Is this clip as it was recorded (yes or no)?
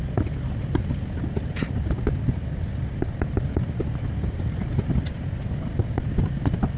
yes